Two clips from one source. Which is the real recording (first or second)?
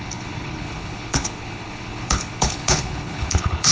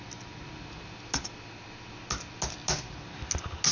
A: second